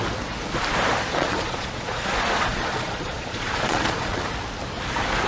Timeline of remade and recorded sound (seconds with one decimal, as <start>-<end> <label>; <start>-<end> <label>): 0.0-1.1 recorded; 1.1-4.2 remade; 4.2-5.3 recorded